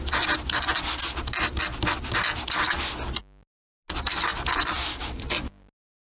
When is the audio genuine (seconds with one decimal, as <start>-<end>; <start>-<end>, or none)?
0.0-6.2